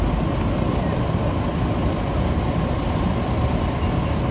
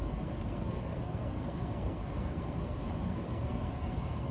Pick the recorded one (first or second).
first